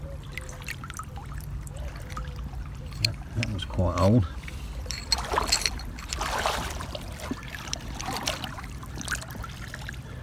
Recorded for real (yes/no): no